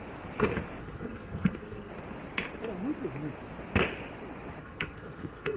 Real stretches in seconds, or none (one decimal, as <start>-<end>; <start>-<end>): 0.0-0.8; 1.9-4.6